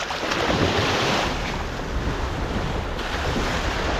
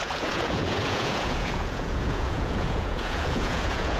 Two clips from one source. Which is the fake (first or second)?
second